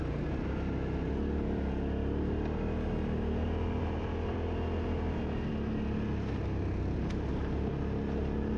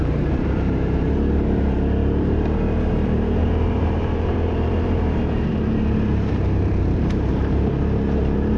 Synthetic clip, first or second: second